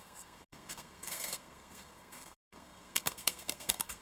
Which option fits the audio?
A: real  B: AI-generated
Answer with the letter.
B